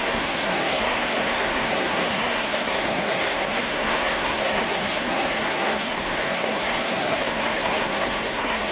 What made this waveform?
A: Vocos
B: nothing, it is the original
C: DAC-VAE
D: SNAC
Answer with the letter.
D